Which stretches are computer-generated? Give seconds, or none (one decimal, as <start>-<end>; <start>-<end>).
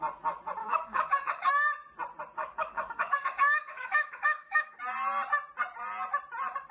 0.6-1.5; 2.4-4.8